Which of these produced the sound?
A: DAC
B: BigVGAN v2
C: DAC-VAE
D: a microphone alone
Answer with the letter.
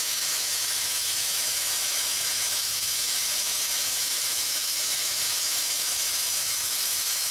C